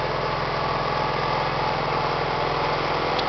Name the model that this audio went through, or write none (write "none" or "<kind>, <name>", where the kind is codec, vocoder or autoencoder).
none